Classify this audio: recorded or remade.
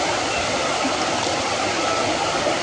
recorded